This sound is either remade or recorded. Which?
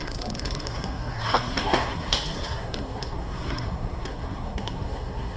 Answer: remade